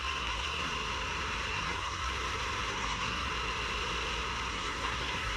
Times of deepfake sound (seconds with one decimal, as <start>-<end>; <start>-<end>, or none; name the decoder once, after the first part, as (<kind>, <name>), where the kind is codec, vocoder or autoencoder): 0.0-0.7 (codec, SNAC); 1.5-2.1; 2.7-3.3; 4.5-5.4